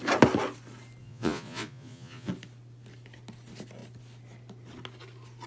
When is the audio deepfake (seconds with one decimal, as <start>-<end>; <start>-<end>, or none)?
1.0-2.3